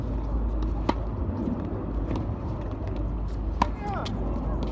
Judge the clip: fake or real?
real